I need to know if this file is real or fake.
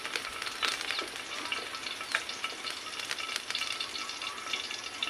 real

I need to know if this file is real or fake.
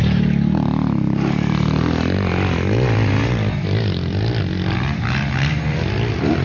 real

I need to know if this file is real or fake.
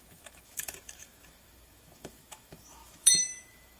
fake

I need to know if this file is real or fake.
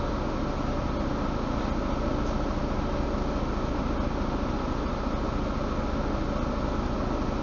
real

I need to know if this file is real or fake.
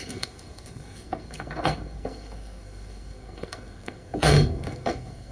fake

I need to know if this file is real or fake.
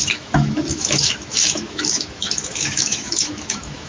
fake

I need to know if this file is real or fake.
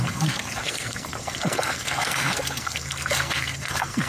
fake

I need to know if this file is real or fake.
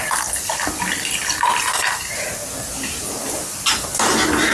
real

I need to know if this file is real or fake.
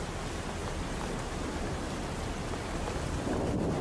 real